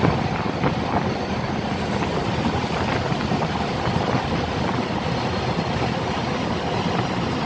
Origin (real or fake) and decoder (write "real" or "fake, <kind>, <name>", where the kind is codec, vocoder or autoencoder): real